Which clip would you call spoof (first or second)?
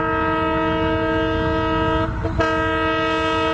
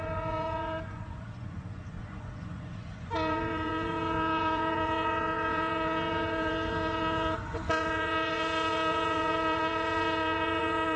second